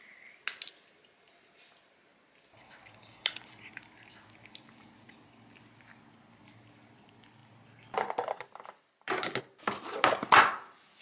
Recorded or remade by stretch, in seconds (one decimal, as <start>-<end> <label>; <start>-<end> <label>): 0.0-11.0 recorded